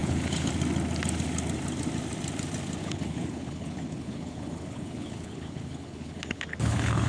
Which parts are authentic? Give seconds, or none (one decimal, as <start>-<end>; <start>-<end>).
0.5-2.8